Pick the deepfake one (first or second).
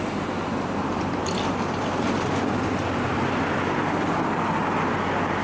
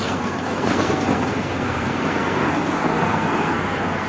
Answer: second